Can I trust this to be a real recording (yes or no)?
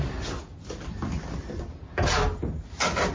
yes